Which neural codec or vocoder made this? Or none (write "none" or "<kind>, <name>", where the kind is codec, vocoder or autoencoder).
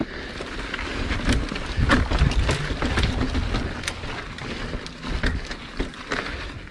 none